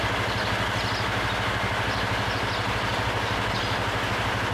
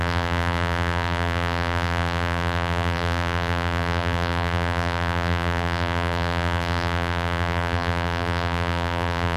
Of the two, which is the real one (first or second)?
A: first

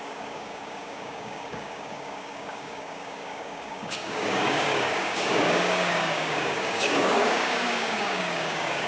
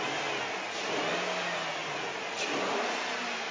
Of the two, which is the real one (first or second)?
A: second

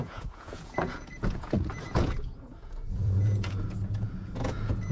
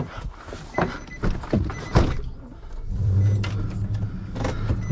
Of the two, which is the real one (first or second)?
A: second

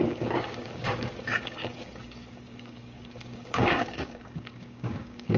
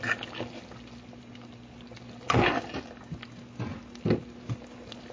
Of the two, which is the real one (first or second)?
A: second